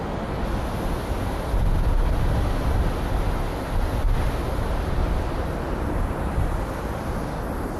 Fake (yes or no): no